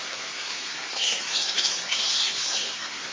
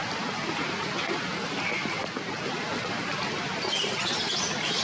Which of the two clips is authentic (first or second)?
second